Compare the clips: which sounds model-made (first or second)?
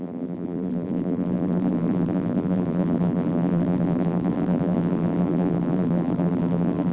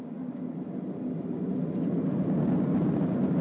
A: first